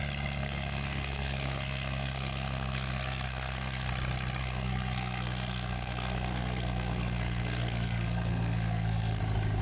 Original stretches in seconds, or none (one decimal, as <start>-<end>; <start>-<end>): 0.0-0.4; 3.9-4.4; 9.2-9.6